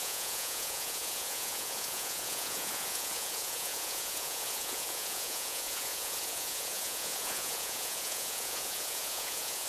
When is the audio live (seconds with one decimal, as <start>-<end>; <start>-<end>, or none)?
none